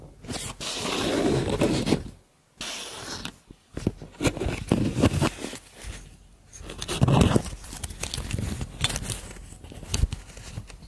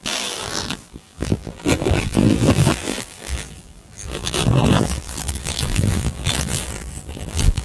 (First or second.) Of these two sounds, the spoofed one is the second